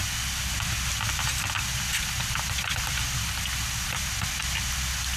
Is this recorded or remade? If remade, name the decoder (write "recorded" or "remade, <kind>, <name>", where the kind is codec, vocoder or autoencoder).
recorded